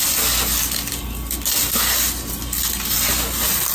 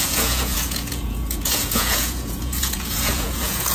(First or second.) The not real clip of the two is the second